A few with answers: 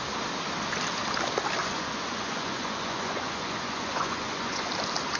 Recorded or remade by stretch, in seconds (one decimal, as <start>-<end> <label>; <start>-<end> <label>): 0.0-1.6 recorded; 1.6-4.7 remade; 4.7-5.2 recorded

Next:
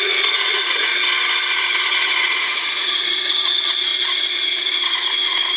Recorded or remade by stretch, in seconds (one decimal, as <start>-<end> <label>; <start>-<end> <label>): 0.0-0.9 remade; 0.9-1.5 recorded; 1.5-5.6 remade

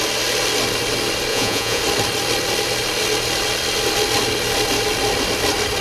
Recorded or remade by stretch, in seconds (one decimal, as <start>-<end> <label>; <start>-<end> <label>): 0.0-1.3 recorded; 1.3-1.8 remade; 1.8-5.8 recorded

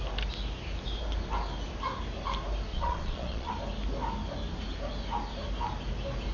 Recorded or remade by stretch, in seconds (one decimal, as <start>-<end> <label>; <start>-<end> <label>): 0.0-2.7 recorded; 2.7-3.5 remade; 3.5-6.3 recorded

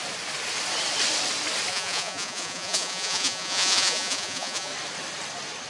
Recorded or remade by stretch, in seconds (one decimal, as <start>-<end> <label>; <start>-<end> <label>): 0.0-1.7 recorded; 1.7-4.7 remade; 4.7-5.7 recorded

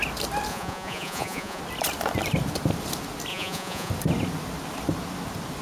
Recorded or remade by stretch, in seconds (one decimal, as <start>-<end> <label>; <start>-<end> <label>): 0.0-0.5 recorded; 0.5-1.6 remade; 1.6-3.3 recorded; 3.3-3.9 remade; 3.9-5.6 recorded

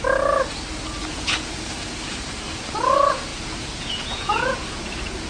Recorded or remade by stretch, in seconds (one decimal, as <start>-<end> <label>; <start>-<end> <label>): 0.0-1.1 recorded; 1.1-1.7 remade; 1.7-3.3 recorded; 3.3-5.3 remade

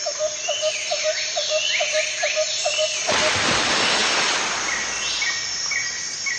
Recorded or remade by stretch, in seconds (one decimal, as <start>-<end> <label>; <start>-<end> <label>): 0.0-6.4 recorded